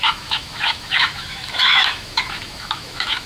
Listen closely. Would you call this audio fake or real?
fake